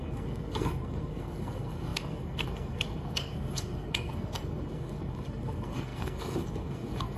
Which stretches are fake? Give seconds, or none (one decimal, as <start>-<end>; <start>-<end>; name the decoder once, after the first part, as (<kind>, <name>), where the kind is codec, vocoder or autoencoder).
0.0-7.2 (codec, SNAC)